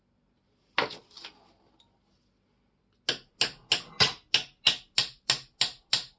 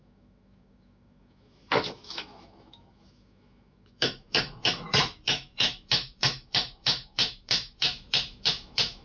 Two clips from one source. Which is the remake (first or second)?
second